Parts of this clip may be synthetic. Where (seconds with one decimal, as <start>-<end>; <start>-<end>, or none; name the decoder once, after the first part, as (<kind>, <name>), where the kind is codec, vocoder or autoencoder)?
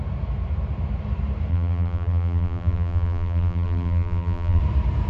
1.5-4.6 (vocoder, BigVGAN v2)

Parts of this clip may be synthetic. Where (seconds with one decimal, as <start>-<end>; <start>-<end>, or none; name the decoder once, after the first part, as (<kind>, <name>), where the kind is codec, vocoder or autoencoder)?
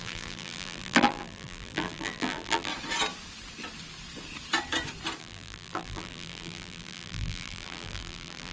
0.0-2.7 (vocoder, BigVGAN v2); 5.2-8.5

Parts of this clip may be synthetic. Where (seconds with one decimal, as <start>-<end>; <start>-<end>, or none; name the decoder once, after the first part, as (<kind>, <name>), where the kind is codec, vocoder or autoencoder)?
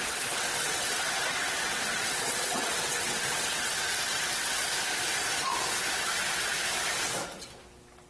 0.0-4.6 (vocoder, WaveNeXt)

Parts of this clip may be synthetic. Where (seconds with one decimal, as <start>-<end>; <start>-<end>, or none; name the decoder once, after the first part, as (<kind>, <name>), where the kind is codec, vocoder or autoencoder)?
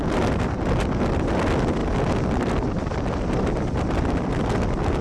none